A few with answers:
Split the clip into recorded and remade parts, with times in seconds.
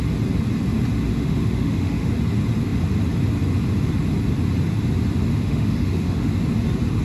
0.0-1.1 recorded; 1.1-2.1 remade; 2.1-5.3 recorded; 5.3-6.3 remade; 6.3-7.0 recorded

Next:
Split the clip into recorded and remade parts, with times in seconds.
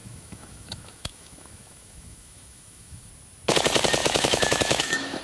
0.0-3.1 remade; 3.1-4.0 recorded; 4.0-5.2 remade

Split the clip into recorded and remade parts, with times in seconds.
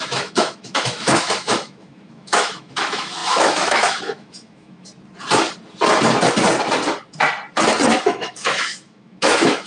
0.0-4.9 remade; 4.9-8.0 recorded; 8.0-9.7 remade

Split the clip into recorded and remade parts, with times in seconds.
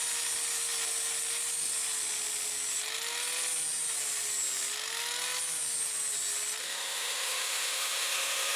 0.0-6.6 recorded; 6.6-8.6 remade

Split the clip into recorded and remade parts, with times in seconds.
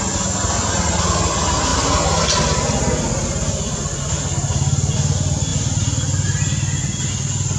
0.0-7.6 recorded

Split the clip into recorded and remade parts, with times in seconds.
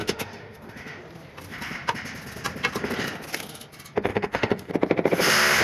0.0-1.0 remade; 1.0-4.1 recorded; 4.1-4.7 remade; 4.7-5.6 recorded